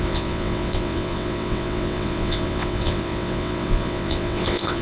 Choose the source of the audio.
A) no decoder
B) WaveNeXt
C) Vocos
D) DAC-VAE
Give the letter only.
B